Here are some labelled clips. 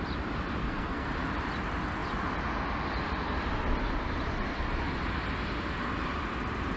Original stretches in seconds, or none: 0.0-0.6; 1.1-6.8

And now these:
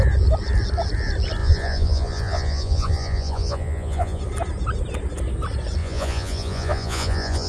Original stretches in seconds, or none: 0.0-1.4; 4.2-5.8

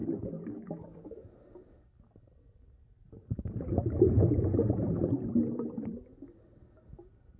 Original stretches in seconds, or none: 1.3-7.4

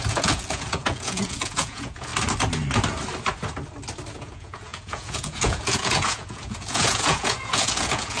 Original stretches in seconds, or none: 2.1-4.1